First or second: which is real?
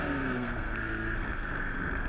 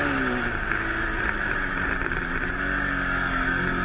second